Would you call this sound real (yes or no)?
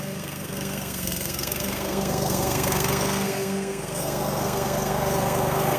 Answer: no